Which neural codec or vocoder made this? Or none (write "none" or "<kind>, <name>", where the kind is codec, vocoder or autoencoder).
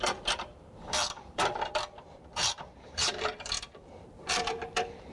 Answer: vocoder, BigVGAN v2